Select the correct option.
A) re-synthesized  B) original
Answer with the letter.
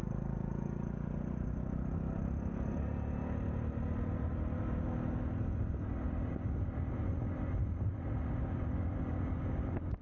B